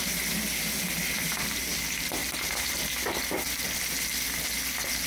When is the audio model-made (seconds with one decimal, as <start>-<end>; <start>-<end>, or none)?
2.2-2.9